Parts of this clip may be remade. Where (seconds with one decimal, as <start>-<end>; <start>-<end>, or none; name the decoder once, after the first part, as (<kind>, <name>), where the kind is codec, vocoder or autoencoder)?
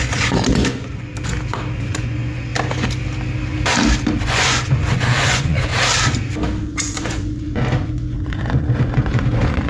0.0-1.1 (vocoder, Vocos); 1.8-2.5; 4.2-5.7; 6.6-9.7